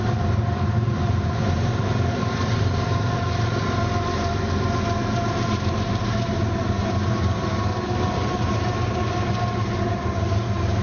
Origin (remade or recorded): remade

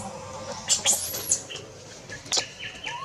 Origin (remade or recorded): recorded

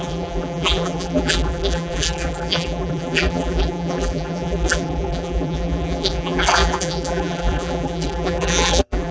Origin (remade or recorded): remade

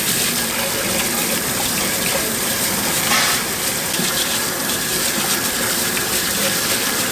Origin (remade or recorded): remade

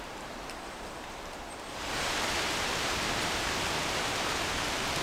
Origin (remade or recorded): remade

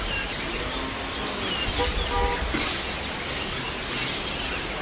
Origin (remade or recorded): recorded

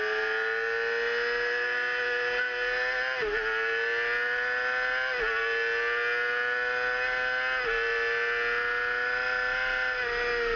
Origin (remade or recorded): recorded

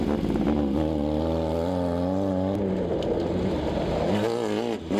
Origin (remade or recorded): recorded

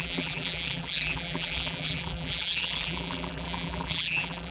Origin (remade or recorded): remade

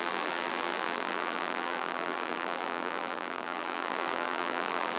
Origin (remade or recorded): remade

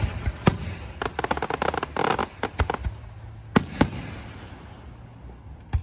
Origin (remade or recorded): recorded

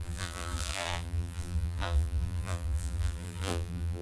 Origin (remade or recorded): remade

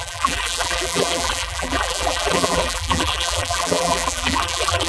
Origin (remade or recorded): remade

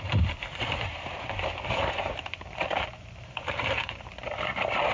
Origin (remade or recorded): remade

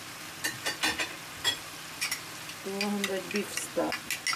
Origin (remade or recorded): recorded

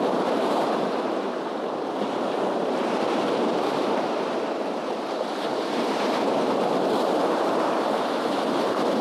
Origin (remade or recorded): remade